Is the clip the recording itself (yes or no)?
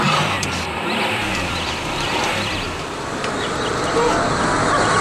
no